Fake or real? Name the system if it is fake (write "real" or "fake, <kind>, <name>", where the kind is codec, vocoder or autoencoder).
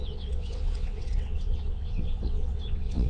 fake, vocoder, WaveNeXt